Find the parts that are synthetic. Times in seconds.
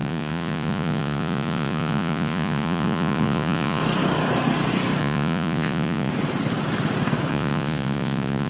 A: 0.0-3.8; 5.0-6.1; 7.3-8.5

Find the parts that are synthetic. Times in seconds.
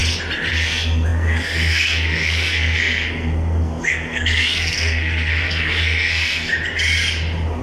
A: 0.5-6.5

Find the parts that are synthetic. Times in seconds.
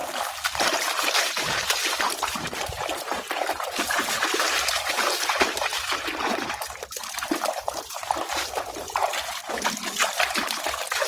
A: 0.0-9.1; 10.3-11.1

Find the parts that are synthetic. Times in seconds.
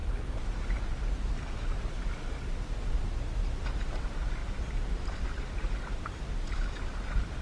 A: 4.4-6.0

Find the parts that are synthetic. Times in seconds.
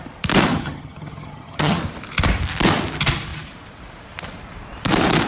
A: 0.5-1.8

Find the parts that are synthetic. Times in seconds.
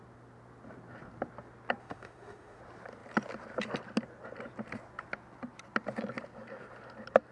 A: 1.8-2.6